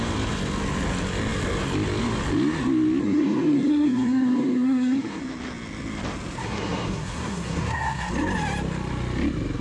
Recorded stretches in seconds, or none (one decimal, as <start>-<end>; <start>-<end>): 0.0-3.0; 5.2-6.4; 8.1-9.6